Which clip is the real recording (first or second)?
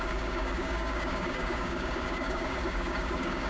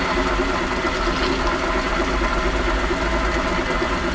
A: second